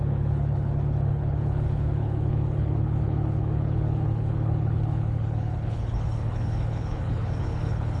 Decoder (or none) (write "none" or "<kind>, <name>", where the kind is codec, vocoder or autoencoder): codec, HILCodec